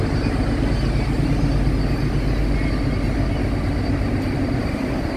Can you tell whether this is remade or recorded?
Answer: recorded